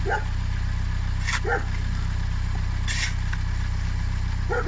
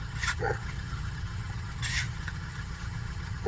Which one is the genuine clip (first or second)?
first